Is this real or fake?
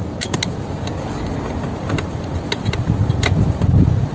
real